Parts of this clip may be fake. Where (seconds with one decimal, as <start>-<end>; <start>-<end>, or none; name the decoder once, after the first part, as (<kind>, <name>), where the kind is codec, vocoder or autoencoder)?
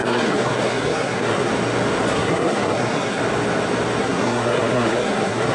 0.0-1.5 (codec, SNAC); 2.1-3.2; 4.0-5.5